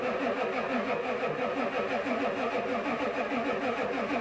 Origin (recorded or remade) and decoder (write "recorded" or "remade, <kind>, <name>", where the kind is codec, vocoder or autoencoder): recorded